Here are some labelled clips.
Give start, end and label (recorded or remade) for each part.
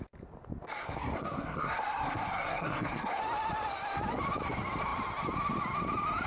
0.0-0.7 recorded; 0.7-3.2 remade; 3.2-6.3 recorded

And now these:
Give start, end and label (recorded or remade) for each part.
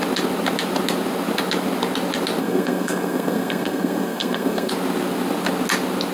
0.0-2.4 recorded; 2.4-4.7 remade; 4.7-6.1 recorded